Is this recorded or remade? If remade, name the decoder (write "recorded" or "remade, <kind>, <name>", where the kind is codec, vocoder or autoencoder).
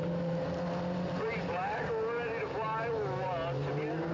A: recorded